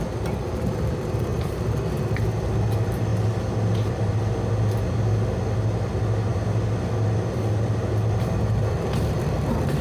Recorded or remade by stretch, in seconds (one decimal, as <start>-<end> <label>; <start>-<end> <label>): 0.0-9.8 recorded